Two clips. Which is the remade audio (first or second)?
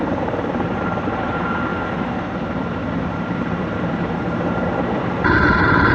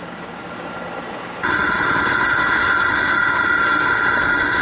first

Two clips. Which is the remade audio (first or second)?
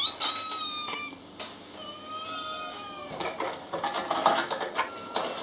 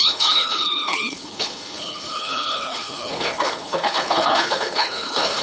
second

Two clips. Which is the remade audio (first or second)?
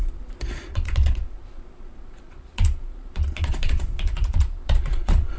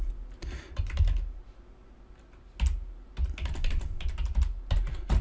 first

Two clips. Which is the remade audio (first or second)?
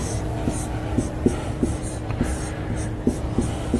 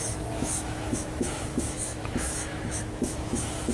second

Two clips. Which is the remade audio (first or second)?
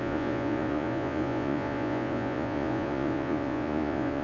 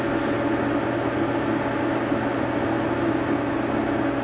first